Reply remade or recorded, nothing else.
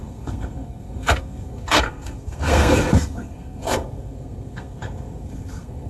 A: remade